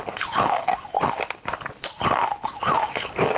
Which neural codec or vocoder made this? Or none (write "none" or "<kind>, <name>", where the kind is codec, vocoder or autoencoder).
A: none